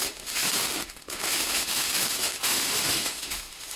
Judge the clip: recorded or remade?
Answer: remade